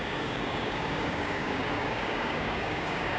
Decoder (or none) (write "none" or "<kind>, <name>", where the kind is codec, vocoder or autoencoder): codec, DAC